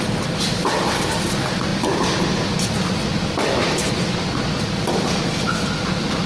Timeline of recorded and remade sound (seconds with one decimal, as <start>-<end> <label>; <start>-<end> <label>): 0.0-6.3 recorded

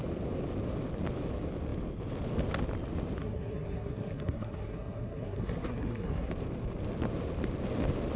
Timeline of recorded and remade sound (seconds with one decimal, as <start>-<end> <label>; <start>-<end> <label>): 0.0-3.2 recorded; 3.2-6.3 remade; 6.3-8.2 recorded

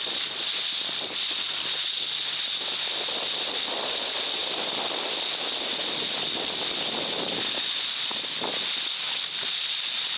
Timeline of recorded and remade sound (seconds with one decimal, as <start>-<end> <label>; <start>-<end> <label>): 0.0-10.2 recorded

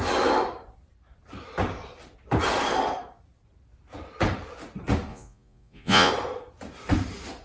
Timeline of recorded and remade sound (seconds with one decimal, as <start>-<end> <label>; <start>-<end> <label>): 0.0-5.1 recorded; 5.1-6.1 remade; 6.1-7.4 recorded

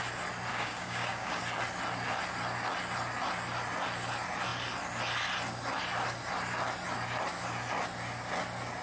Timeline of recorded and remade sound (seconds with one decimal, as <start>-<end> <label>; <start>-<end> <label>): 0.0-0.5 recorded; 0.5-1.4 remade; 1.4-8.8 recorded

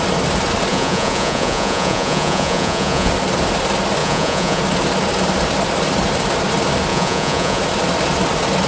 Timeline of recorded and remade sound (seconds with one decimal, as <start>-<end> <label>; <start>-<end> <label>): 0.0-0.7 recorded; 0.7-3.1 remade; 3.1-4.0 recorded; 4.0-4.6 remade; 4.6-6.9 recorded; 6.9-7.6 remade; 7.6-8.7 recorded